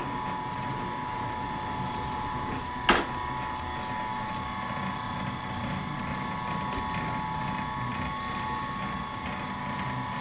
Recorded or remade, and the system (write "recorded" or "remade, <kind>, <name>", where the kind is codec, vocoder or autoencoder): recorded